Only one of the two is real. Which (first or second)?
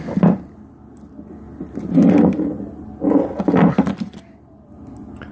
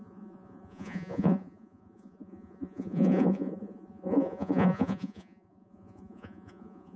first